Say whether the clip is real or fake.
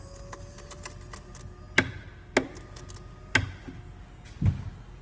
real